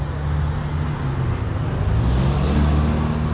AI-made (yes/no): no